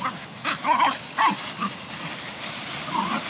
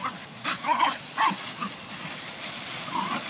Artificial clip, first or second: second